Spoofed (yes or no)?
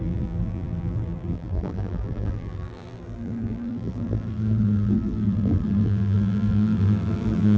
yes